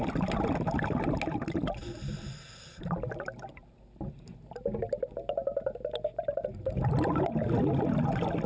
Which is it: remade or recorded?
recorded